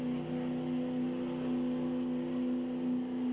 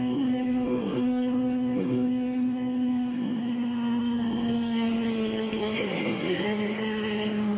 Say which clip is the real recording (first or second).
first